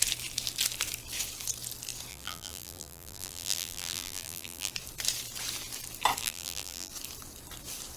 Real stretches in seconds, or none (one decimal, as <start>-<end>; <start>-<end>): 0.0-2.1; 4.7-6.2; 6.9-8.0